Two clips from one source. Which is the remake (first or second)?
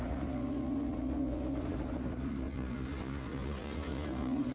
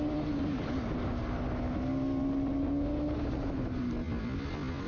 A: first